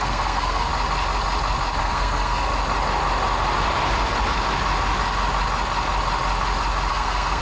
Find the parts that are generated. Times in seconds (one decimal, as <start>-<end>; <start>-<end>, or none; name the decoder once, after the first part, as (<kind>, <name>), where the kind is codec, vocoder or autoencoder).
0.0-0.7 (codec, SNAC); 1.8-2.5; 6.9-7.4